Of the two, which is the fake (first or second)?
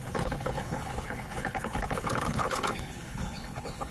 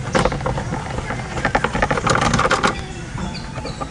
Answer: first